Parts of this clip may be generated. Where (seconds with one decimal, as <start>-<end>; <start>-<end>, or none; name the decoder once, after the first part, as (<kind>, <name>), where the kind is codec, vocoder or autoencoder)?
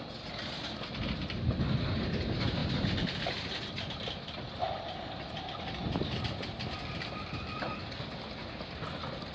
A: none